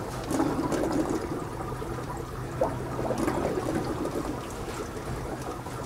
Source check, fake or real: real